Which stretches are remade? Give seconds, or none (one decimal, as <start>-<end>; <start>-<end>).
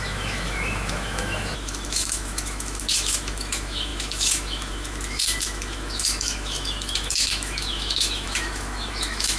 0.0-9.4